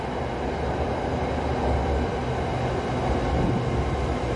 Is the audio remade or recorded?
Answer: recorded